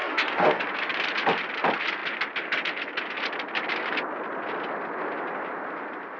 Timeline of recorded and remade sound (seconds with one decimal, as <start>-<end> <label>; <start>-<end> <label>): 0.0-0.6 remade; 0.6-6.2 recorded